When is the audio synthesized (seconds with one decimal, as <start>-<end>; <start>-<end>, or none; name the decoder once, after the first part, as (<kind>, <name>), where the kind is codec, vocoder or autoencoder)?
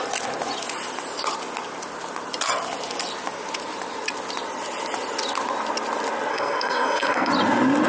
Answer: 6.3-7.3 (codec, SNAC)